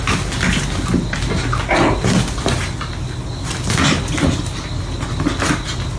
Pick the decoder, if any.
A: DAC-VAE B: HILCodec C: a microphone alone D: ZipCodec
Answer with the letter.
C